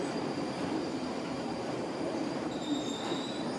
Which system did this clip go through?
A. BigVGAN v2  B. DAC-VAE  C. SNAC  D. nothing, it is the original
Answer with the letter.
A